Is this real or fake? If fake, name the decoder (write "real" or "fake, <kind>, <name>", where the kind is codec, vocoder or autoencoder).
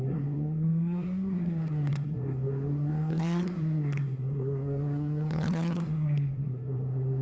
fake, codec, SNAC